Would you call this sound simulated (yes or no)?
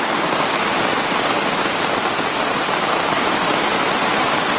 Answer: yes